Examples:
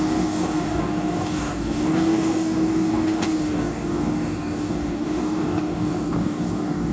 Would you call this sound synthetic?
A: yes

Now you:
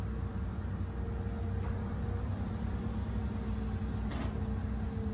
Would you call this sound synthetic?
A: no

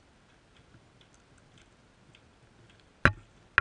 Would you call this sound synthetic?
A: no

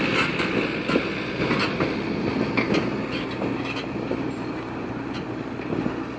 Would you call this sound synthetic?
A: no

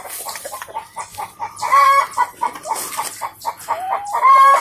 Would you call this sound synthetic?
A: yes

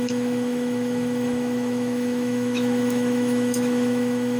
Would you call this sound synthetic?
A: yes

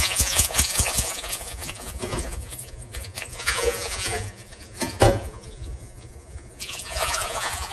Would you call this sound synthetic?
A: yes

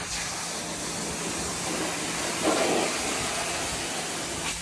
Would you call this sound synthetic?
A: no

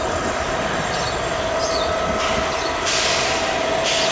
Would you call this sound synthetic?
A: no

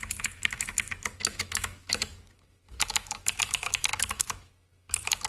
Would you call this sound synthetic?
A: yes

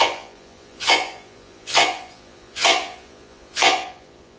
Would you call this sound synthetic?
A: yes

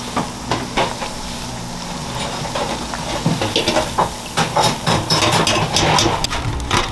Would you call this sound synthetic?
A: no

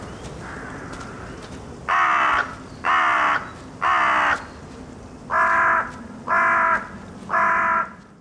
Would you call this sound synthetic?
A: no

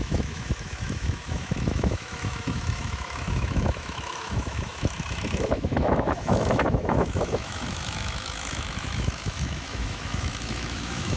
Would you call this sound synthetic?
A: yes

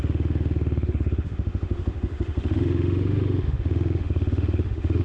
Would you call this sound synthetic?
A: yes